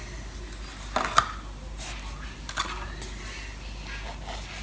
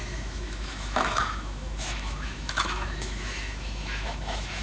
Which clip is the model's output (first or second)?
second